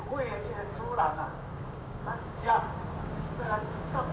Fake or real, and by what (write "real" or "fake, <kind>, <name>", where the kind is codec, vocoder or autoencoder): fake, codec, DAC